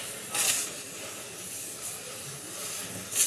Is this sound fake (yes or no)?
no